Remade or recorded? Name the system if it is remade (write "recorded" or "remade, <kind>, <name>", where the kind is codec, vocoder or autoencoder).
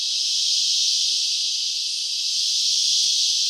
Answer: recorded